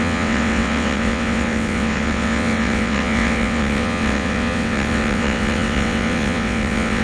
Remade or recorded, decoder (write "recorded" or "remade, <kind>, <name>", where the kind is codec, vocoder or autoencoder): remade, vocoder, WaveNeXt